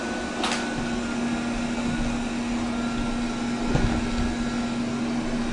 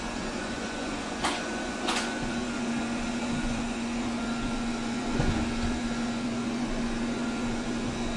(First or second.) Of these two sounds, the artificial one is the second